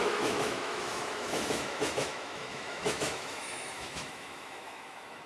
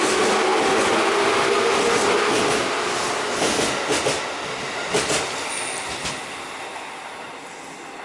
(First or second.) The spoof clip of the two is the first